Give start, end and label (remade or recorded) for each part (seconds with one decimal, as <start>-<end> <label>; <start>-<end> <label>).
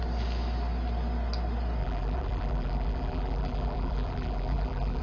0.0-1.8 recorded; 1.8-5.0 remade